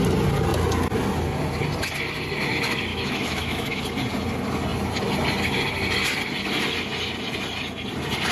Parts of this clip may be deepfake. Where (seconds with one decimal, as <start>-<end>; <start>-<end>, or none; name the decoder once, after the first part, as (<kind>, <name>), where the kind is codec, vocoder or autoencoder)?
2.9-3.8 (autoencoder, DAC-VAE)